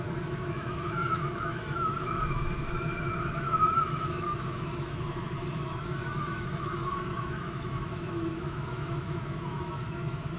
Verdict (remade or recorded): remade